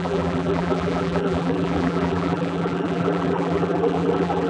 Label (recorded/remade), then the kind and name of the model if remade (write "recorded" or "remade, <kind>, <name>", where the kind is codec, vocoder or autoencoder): remade, vocoder, BigVGAN v2